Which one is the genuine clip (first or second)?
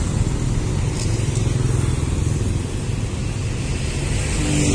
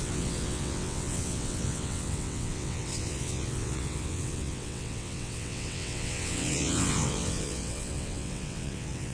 first